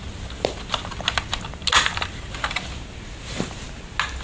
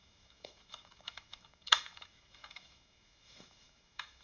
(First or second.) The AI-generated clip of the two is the second